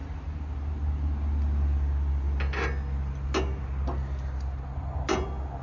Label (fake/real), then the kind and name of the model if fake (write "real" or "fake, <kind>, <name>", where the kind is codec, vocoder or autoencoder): real